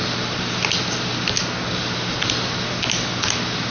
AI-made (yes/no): no